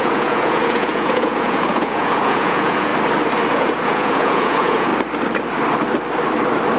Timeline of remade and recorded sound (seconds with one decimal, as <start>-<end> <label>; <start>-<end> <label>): 0.0-2.9 remade; 2.9-3.5 recorded; 3.5-4.9 remade; 4.9-6.8 recorded